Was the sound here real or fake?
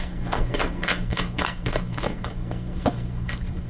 fake